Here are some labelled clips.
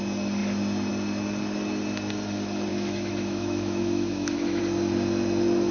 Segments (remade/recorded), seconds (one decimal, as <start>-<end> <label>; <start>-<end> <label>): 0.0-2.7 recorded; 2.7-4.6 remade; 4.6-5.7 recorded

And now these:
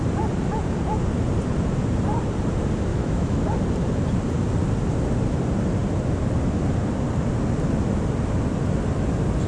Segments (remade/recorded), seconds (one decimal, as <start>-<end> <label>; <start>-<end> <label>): 0.0-2.9 recorded; 2.9-3.4 remade; 3.4-9.5 recorded

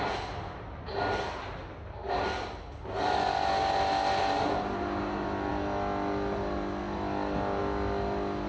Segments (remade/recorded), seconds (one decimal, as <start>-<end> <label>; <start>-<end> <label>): 0.0-8.5 recorded